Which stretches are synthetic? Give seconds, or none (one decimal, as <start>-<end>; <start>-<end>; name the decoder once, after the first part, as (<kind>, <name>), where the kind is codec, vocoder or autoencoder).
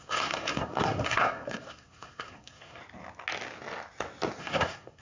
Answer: 0.0-2.8 (codec, SNAC); 4.4-5.0